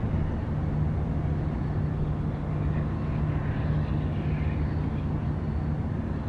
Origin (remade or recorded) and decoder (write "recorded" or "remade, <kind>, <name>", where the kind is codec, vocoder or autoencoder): recorded